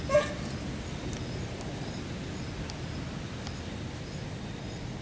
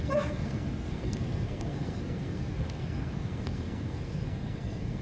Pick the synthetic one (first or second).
second